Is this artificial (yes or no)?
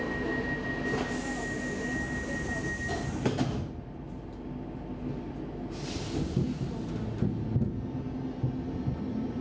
no